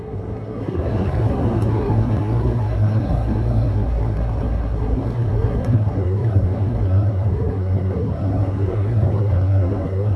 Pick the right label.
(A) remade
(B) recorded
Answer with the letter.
A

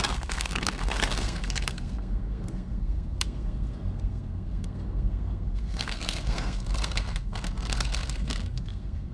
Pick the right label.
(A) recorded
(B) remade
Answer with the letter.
B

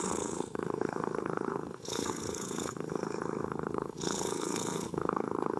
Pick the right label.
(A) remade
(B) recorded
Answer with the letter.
A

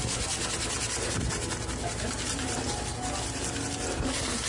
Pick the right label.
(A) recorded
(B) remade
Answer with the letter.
A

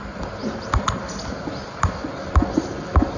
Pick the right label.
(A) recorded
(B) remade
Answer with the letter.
A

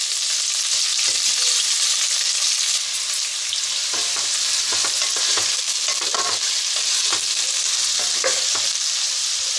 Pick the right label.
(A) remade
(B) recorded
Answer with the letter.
B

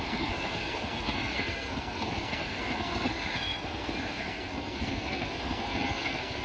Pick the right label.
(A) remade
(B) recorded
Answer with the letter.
A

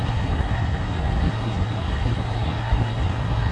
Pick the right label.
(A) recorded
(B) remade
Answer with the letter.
B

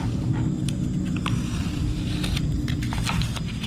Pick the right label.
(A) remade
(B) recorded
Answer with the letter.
B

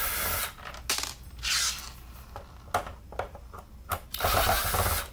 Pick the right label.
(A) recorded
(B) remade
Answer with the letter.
A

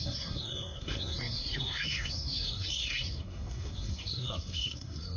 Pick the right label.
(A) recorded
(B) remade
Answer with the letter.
B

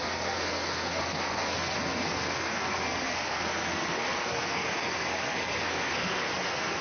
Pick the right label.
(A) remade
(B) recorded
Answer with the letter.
A